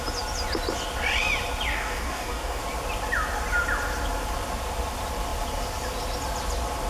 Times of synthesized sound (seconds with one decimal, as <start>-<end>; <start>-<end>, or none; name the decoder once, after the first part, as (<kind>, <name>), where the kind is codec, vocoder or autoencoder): 1.7-2.6 (codec, DAC)